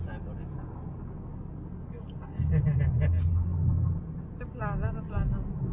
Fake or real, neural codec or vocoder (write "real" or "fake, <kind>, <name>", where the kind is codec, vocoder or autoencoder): real